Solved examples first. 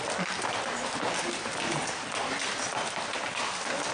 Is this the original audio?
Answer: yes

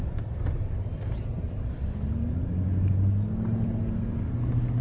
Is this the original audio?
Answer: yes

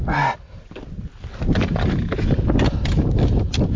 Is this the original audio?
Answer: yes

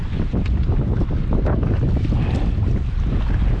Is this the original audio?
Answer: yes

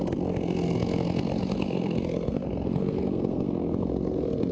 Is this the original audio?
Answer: no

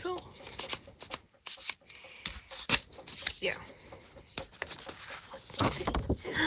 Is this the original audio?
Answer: yes